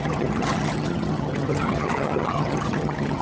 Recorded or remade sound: remade